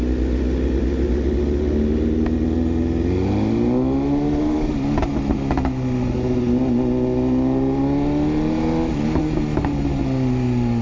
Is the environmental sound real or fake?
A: real